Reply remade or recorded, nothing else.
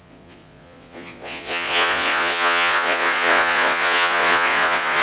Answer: remade